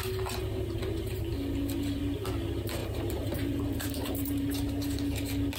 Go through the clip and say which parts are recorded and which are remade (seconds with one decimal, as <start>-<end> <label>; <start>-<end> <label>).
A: 0.0-2.8 recorded; 2.8-4.5 remade; 4.5-5.6 recorded